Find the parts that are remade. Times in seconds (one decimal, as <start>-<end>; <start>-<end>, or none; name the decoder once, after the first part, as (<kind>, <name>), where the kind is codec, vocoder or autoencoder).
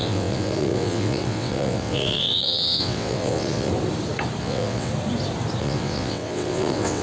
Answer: 0.0-3.7 (vocoder, WaveNeXt); 4.4-4.9; 5.6-7.0